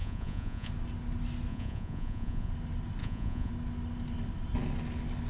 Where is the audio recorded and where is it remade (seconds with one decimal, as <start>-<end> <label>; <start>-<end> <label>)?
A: 0.0-0.7 remade; 0.7-1.5 recorded; 1.5-2.5 remade; 2.5-3.0 recorded; 3.0-3.5 remade; 3.5-5.3 recorded